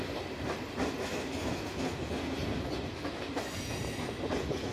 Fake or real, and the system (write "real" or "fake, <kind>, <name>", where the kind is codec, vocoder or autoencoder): real